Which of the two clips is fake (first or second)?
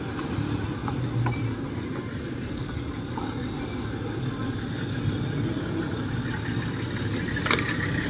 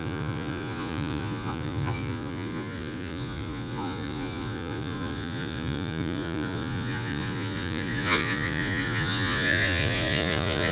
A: second